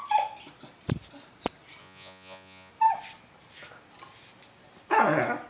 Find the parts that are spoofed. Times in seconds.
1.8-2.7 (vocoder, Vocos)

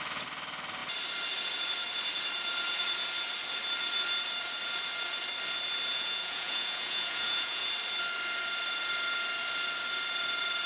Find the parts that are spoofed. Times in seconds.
5.9-7.7 (vocoder, Vocos)